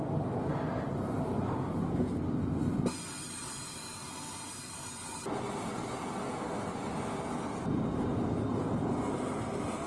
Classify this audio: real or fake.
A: real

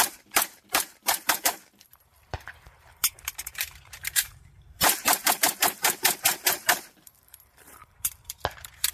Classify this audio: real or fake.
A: fake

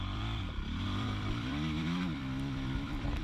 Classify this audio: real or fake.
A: fake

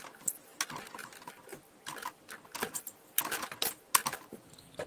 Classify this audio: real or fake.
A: real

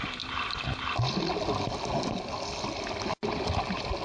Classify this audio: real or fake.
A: real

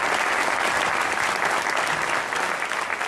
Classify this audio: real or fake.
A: real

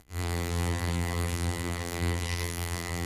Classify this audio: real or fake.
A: fake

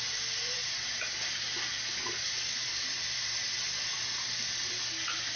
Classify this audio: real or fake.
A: real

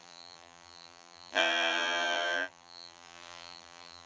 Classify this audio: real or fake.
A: fake